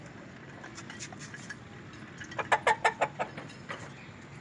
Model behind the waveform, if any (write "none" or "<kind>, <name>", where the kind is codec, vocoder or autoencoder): none